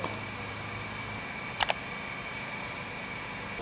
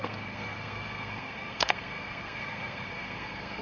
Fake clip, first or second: second